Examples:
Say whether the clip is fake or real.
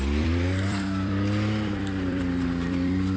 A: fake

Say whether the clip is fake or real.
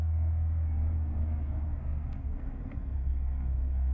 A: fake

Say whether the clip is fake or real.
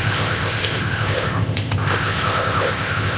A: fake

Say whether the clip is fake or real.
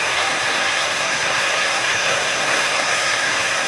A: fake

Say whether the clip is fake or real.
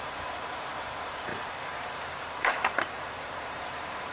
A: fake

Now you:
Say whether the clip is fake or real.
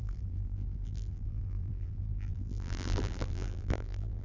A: fake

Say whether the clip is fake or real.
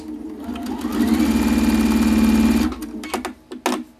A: real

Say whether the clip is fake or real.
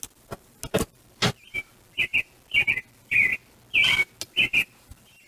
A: real